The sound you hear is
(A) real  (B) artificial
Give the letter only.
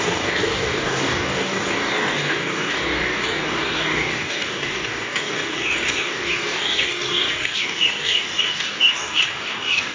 B